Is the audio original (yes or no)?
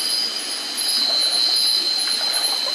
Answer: yes